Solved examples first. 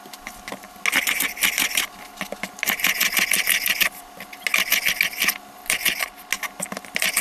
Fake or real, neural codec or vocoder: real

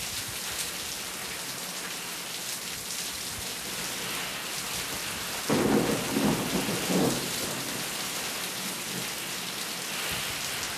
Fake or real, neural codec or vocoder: real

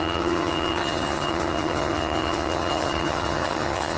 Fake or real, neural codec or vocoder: fake, vocoder, HiFi-GAN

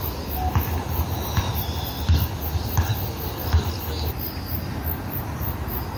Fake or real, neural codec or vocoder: real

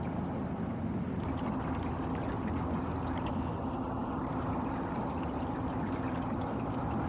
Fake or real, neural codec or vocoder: real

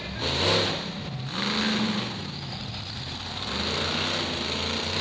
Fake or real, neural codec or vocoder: real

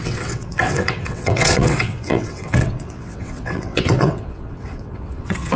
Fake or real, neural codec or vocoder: fake, vocoder, WaveNeXt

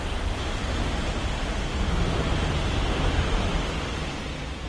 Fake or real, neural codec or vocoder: real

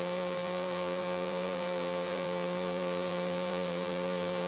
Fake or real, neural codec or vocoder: fake, vocoder, BigVGAN v2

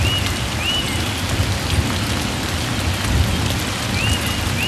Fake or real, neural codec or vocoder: real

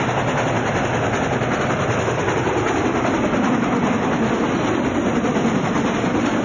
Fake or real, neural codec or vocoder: real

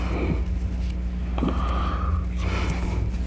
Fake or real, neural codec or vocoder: real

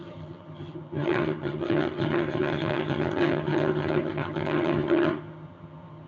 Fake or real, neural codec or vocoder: fake, vocoder, HiFi-GAN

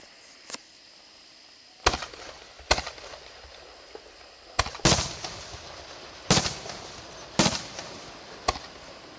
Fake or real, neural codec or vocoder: real